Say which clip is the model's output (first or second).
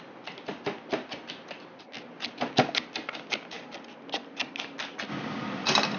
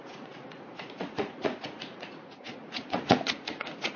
second